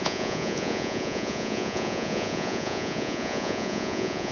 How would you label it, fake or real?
fake